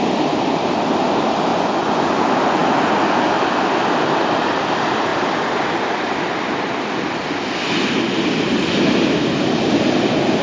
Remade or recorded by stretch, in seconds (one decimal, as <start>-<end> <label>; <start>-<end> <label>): 0.0-1.5 recorded; 1.5-2.2 remade; 2.2-10.4 recorded